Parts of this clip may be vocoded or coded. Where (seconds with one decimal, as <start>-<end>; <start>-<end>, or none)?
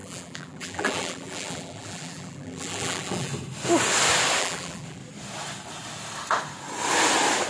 0.0-3.3; 4.4-5.0